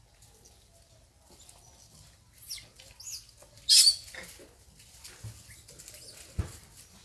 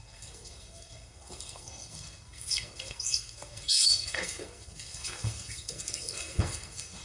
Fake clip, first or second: second